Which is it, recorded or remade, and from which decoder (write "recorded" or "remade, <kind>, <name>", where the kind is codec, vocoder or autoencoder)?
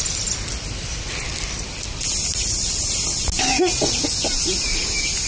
recorded